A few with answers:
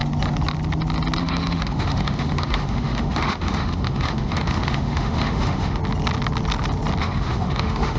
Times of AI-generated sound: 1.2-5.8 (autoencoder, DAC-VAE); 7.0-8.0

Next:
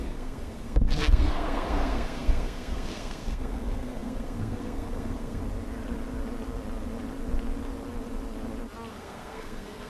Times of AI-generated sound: 0.0-5.4 (codec, SNAC); 8.9-9.9

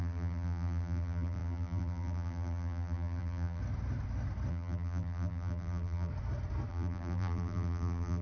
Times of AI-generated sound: 0.0-3.6 (vocoder, BigVGAN v2); 4.5-6.1; 6.7-8.2

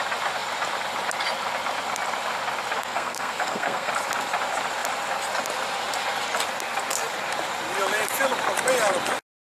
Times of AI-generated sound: 2.8-3.9 (codec, SNAC)

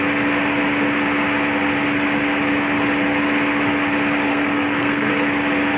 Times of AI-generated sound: 4.3-5.1 (codec, SNAC)

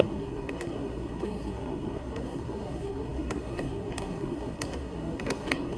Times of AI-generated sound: 0.0-5.8 (codec, SNAC)